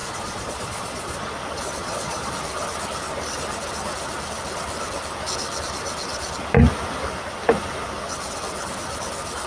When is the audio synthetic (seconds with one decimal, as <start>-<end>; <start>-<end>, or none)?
0.0-1.3; 1.8-2.3